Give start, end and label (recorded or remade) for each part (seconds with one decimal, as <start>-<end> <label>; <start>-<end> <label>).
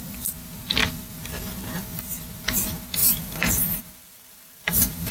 0.0-3.0 recorded; 3.0-5.1 remade